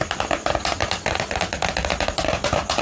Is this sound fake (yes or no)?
no